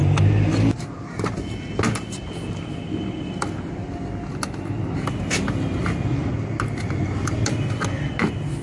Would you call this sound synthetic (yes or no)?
no